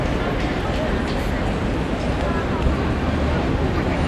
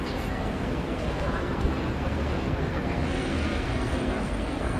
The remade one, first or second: second